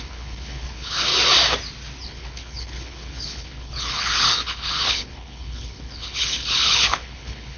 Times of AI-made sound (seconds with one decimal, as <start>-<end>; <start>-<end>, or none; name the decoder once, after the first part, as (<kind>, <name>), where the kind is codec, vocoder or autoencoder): 0.0-1.1 (codec, HILCodec); 2.0-7.6